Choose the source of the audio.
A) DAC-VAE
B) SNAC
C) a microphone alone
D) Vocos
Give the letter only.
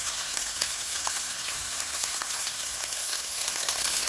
B